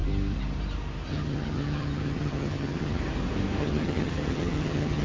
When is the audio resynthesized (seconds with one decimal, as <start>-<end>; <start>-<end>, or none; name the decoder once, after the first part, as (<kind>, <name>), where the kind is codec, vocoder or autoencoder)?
1.1-3.0 (vocoder, HiFi-GAN); 3.6-5.0